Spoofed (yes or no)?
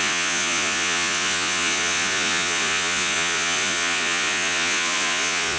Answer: yes